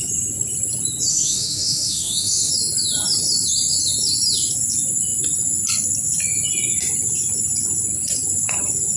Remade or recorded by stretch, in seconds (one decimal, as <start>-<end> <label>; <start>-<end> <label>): 0.0-1.1 recorded; 1.1-2.5 remade; 2.5-9.0 recorded